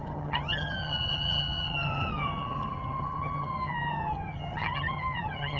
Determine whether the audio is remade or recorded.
remade